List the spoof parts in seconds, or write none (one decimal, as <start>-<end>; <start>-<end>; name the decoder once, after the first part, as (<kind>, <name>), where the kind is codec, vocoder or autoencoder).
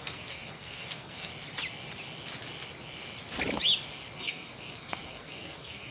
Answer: 0.0-1.3 (codec, SNAC); 4.2-5.9